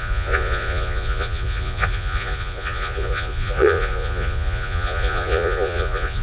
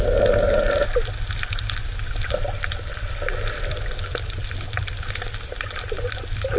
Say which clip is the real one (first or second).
second